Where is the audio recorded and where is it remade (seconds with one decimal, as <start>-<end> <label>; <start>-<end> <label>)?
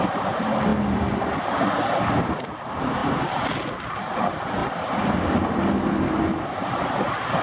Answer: 0.0-7.4 recorded